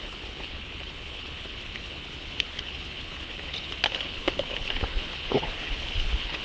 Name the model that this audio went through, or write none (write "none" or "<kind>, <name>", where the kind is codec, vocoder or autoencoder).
codec, HILCodec